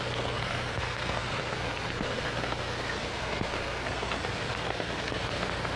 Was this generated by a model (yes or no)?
yes